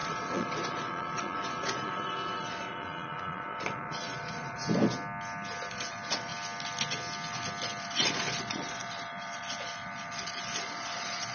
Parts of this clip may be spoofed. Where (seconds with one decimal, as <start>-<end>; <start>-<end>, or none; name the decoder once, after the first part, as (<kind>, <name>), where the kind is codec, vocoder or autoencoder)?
0.0-4.6 (vocoder, Vocos); 5.7-6.3; 7.8-11.3